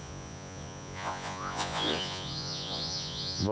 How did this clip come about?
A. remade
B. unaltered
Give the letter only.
A